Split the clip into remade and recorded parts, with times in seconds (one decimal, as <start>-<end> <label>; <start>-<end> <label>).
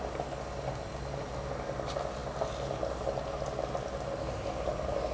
0.0-5.1 recorded